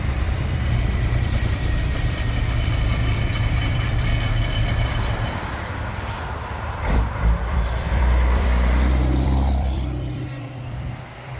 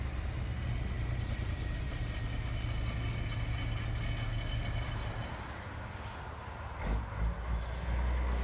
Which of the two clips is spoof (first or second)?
first